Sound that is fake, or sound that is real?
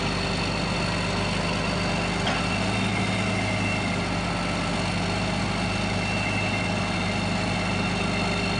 real